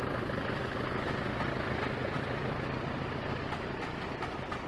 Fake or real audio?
real